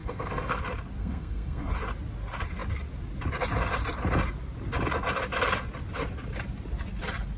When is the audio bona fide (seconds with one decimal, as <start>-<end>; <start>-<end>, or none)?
0.6-1.0; 1.7-7.4